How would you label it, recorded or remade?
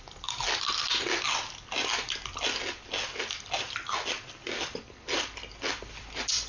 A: recorded